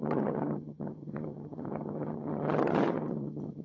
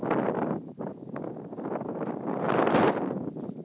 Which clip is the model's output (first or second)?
first